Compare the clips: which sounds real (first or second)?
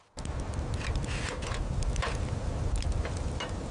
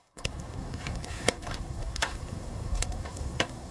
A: first